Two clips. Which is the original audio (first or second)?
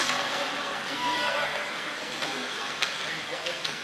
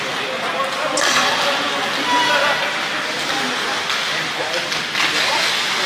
second